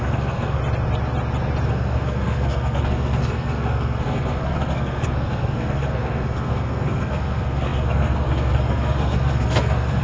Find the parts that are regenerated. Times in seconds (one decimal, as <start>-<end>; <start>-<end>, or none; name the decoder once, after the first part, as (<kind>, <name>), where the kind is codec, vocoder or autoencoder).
0.0-0.6 (codec, SNAC); 1.7-10.0